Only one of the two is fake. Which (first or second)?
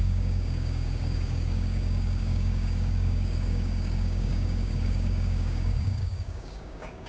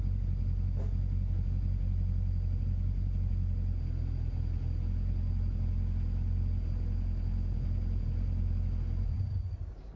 first